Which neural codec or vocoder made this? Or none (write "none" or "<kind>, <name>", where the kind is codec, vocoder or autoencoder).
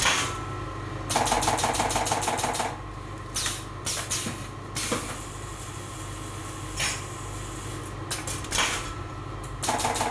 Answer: none